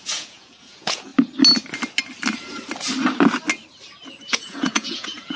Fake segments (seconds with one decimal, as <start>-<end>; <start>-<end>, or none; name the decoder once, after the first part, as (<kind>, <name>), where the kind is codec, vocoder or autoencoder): 0.0-1.1 (vocoder, Vocos); 4.3-5.4